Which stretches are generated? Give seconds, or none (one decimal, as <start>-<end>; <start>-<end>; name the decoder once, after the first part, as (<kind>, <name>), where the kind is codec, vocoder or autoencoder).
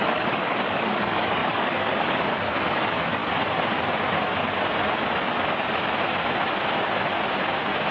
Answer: 0.0-3.2 (codec, DAC)